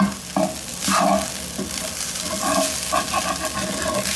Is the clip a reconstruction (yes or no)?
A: no